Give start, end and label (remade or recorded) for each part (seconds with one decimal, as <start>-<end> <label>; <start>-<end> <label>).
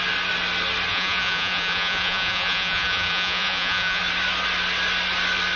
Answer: 0.0-0.9 recorded; 0.9-4.0 remade; 4.0-5.6 recorded